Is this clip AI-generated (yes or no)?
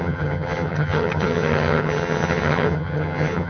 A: yes